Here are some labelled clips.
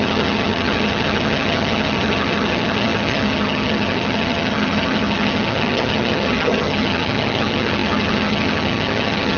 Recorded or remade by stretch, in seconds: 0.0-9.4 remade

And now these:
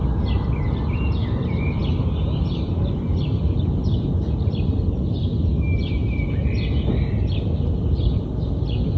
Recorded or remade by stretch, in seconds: 0.0-9.0 recorded

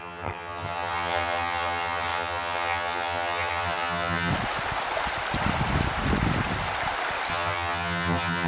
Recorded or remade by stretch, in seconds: 0.0-4.3 remade; 4.3-7.3 recorded; 7.3-8.5 remade

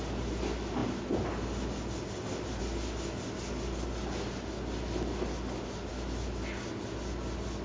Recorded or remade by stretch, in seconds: 0.0-7.6 recorded

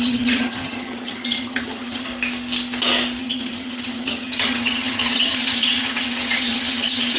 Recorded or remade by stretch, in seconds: 0.0-2.1 remade; 2.1-3.2 recorded; 3.2-7.2 remade

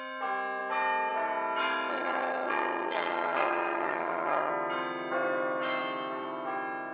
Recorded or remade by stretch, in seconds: 0.0-1.9 recorded; 1.9-4.5 remade; 4.5-6.9 recorded